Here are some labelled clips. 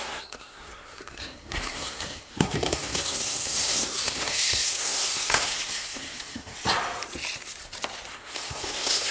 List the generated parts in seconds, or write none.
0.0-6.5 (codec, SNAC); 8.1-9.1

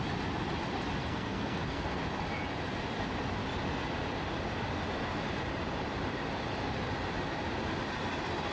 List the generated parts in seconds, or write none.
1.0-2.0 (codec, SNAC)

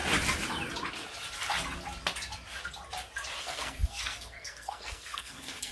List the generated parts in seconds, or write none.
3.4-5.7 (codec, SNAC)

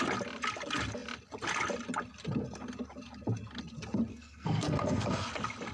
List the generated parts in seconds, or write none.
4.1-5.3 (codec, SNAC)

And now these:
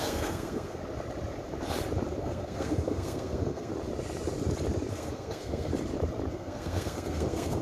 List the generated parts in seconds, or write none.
0.0-0.8 (codec, SNAC); 2.2-3.7; 4.9-5.7; 6.3-7.6